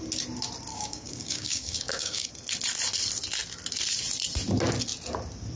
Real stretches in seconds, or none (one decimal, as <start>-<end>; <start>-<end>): 0.0-0.7; 2.3-5.6